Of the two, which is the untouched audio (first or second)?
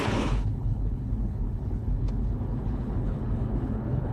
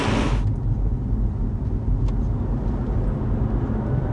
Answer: second